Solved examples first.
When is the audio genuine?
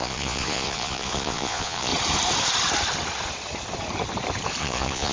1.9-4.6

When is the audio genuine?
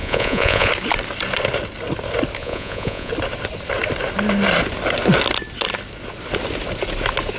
0.7-2.4; 3.1-7.4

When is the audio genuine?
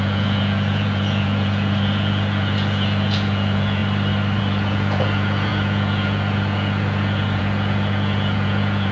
3.8-4.4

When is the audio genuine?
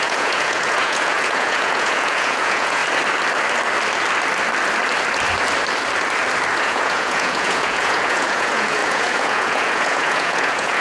2.8-6.6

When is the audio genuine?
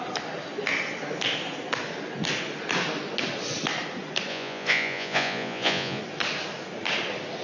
0.0-4.3; 6.0-7.4